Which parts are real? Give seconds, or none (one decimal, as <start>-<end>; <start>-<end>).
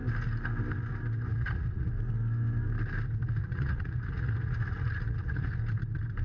0.0-1.3; 1.9-3.4; 5.6-6.2